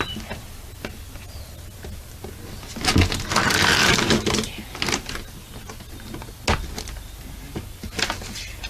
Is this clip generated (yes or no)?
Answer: no